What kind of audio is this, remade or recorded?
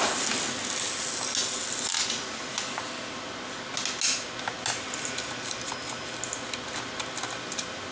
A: recorded